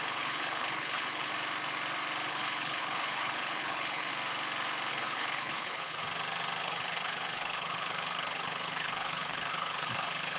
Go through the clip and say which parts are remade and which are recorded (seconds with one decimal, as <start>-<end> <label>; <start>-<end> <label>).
0.0-1.3 remade; 1.3-2.3 recorded; 2.3-4.1 remade; 4.1-4.9 recorded; 4.9-6.0 remade; 6.0-6.6 recorded; 6.6-10.4 remade